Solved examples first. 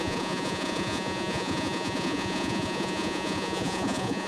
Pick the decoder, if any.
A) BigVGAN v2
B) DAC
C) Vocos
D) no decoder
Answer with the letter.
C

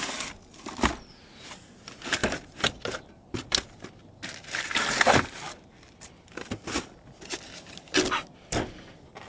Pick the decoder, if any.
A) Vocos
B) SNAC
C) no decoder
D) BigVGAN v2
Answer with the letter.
C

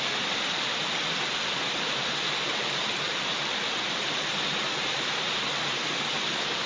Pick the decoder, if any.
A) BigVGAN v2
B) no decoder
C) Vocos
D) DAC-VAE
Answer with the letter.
B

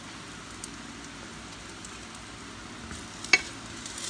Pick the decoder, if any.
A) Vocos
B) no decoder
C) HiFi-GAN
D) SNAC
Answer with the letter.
B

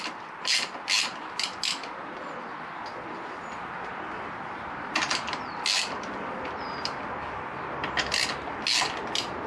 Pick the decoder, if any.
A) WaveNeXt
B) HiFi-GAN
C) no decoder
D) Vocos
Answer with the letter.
C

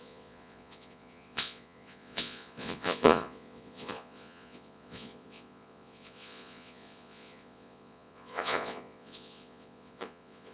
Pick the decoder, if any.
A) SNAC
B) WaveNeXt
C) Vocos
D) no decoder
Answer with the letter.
C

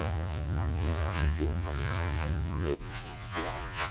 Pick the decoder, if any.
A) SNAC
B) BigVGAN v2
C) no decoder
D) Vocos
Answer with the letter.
D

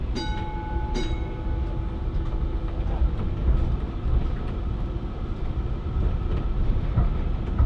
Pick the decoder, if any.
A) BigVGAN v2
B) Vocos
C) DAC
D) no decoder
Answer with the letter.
D